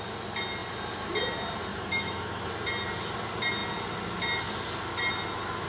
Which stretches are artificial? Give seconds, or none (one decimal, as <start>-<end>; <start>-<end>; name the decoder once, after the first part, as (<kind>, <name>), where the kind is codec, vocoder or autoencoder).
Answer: 1.7-2.5 (autoencoder, DAC-VAE)